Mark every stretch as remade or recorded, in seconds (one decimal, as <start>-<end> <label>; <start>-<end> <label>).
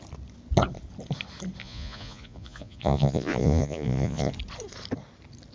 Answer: 0.0-1.6 recorded; 1.6-4.3 remade; 4.3-5.5 recorded